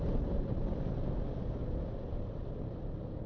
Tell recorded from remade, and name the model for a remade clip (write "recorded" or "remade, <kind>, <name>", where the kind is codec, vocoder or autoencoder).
recorded